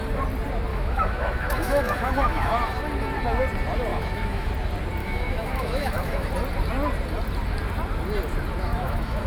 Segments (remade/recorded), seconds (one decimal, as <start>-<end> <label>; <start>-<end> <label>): 0.0-0.7 recorded; 0.7-2.8 remade; 2.8-3.9 recorded; 3.9-4.5 remade; 4.5-5.0 recorded; 5.0-6.3 remade; 6.3-8.7 recorded; 8.7-9.3 remade